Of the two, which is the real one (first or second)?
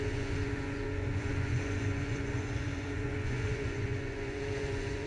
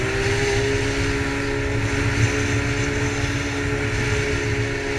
second